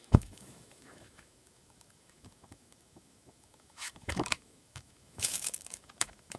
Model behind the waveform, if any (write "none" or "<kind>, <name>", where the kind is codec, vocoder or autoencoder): autoencoder, DAC-VAE